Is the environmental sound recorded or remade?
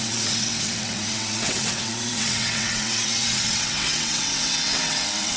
remade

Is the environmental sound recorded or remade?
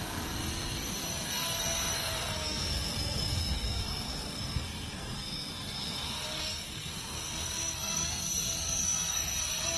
remade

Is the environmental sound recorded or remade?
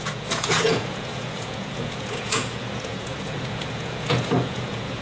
remade